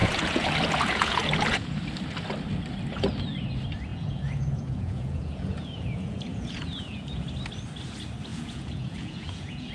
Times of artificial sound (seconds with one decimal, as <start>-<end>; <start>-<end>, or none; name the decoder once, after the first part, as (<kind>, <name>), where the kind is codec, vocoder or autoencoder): 0.0-1.7 (vocoder, Vocos); 3.9-7.2; 8.3-9.7